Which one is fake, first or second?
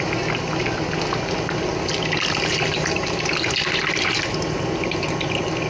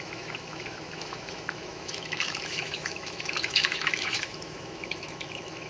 second